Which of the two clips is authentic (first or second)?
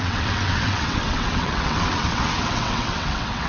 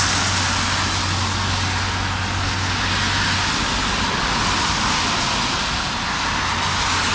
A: second